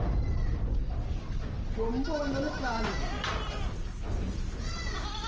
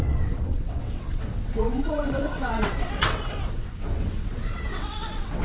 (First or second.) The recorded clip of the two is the first